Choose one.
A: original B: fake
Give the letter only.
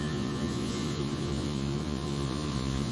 B